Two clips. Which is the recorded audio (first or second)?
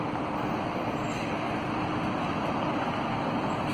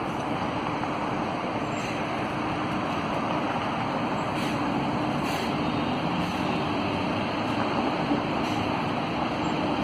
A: first